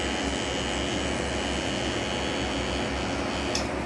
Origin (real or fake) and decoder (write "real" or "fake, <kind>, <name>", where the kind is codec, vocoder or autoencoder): real